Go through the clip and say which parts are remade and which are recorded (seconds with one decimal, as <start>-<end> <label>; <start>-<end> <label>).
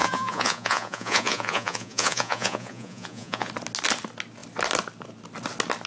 0.0-3.5 remade; 3.5-5.9 recorded